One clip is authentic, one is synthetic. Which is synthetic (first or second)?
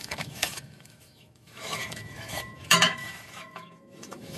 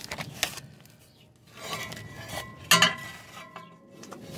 first